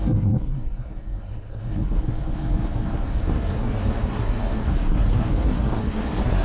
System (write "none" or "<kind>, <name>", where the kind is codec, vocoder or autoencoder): codec, SNAC